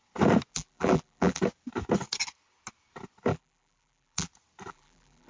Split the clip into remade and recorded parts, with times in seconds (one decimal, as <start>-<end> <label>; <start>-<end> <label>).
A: 0.0-0.5 recorded; 0.5-1.4 remade; 1.4-3.3 recorded; 3.3-4.3 remade; 4.3-4.7 recorded; 4.7-5.3 remade